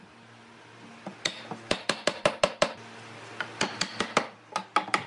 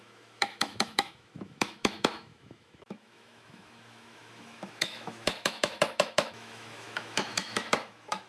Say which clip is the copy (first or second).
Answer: second